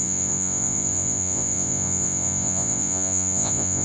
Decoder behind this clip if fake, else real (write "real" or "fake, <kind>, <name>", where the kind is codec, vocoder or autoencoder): fake, vocoder, Vocos